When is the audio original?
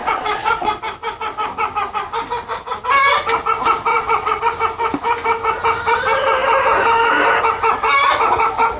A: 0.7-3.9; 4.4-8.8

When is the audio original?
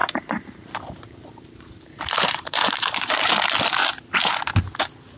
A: 3.1-5.2